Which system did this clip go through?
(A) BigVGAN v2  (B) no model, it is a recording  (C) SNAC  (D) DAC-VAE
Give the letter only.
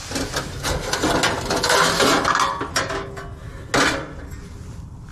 B